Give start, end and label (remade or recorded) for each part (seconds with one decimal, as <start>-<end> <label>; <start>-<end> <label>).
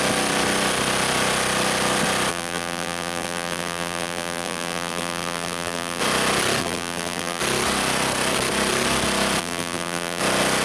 0.0-2.3 recorded; 2.3-6.0 remade; 6.0-6.6 recorded; 6.6-7.4 remade; 7.4-9.4 recorded; 9.4-10.2 remade; 10.2-10.6 recorded